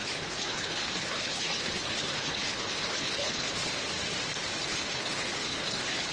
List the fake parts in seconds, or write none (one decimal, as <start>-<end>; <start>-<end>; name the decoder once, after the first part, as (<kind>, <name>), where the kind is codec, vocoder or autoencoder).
0.0-3.7 (codec, HILCodec); 4.7-6.1

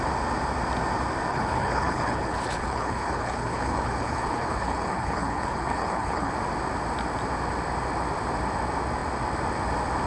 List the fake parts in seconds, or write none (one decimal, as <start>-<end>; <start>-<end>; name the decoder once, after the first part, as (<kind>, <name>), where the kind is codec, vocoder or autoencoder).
1.3-6.3 (codec, HILCodec)

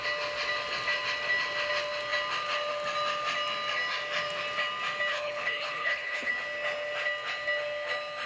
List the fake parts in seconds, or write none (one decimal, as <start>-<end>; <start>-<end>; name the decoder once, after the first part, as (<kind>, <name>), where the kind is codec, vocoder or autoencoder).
5.1-6.3 (codec, HILCodec)

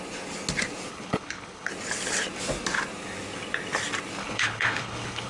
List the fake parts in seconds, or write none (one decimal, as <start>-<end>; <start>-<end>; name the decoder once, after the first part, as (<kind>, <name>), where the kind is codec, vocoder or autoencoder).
0.9-1.7 (codec, HILCodec); 4.2-5.3

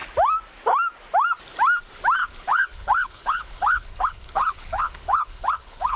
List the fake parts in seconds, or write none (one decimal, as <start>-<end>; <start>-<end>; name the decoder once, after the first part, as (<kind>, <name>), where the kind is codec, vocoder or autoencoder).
2.2-6.0 (codec, HILCodec)

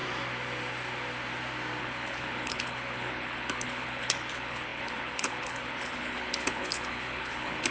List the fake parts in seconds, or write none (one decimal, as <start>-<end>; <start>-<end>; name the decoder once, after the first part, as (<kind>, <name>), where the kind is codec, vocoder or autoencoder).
1.8-7.7 (codec, HILCodec)